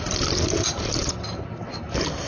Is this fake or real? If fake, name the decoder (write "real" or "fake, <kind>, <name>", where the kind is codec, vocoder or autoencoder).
real